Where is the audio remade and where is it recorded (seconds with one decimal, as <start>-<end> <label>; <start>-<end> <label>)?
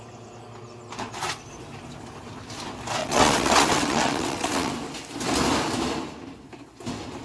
0.0-3.0 recorded; 3.0-4.7 remade; 4.7-7.2 recorded